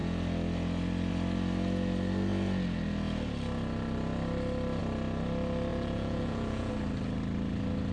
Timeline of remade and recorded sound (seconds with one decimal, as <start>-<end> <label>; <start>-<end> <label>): 0.0-5.7 recorded; 5.7-6.7 remade; 6.7-7.9 recorded

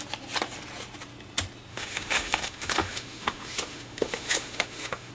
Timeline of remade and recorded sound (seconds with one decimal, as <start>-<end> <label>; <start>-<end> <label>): 0.0-1.7 recorded; 1.7-5.1 remade

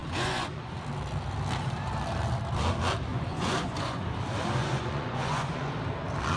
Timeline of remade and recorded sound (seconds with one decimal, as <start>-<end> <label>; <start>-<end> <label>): 0.0-0.7 remade; 0.7-3.1 recorded; 3.1-4.0 remade; 4.0-4.6 recorded; 4.6-5.7 remade; 5.7-6.4 recorded

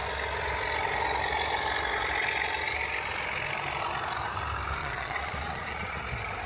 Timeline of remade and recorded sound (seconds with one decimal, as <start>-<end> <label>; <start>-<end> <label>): 0.0-4.8 recorded; 4.8-6.0 remade; 6.0-6.5 recorded

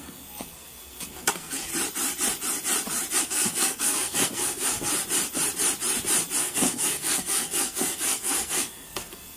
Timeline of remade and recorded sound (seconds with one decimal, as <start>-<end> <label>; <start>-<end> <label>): 0.0-1.7 remade; 1.7-3.2 recorded; 3.2-4.9 remade; 4.9-6.4 recorded; 6.4-9.4 remade

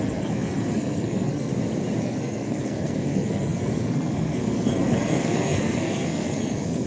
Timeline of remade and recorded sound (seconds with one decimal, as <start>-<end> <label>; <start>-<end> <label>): 0.0-1.5 remade; 1.5-2.0 recorded; 2.0-6.9 remade

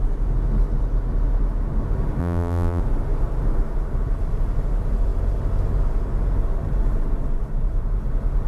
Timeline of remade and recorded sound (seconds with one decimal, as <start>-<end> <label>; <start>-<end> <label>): 0.0-2.2 recorded; 2.2-2.8 remade; 2.8-8.5 recorded